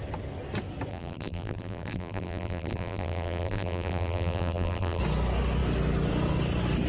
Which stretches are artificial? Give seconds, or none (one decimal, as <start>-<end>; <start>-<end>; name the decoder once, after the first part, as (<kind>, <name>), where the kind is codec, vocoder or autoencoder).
0.9-5.0 (vocoder, BigVGAN v2)